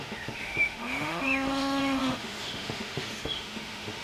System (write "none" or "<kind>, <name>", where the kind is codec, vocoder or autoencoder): autoencoder, DAC-VAE